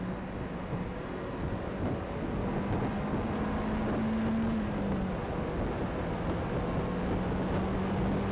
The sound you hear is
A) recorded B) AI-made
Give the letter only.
A